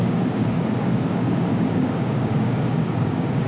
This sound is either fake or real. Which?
fake